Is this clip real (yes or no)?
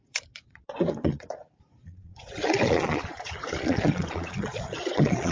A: no